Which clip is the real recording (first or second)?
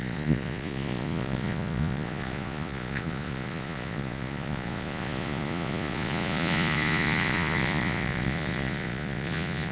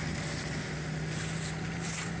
second